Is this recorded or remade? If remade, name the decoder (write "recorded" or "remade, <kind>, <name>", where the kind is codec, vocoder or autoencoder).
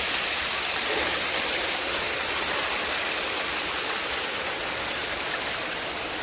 recorded